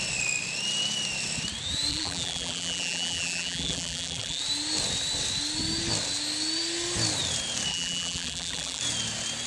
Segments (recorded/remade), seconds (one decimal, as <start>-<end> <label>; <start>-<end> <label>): 0.0-1.9 recorded; 1.9-4.4 remade; 4.4-7.7 recorded; 7.7-8.8 remade; 8.8-9.5 recorded